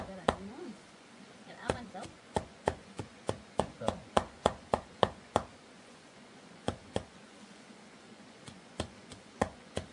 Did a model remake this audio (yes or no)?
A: yes